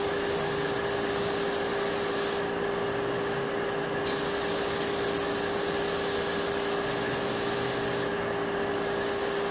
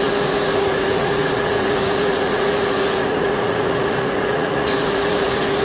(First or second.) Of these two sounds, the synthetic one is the second